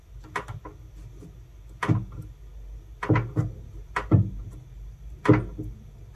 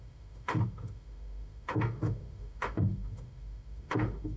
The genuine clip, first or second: first